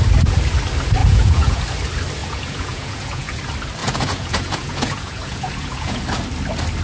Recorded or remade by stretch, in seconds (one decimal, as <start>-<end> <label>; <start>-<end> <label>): 0.0-1.0 recorded; 1.0-1.6 remade; 1.6-2.2 recorded; 2.2-3.4 remade; 3.4-3.8 recorded; 3.8-6.0 remade; 6.0-6.8 recorded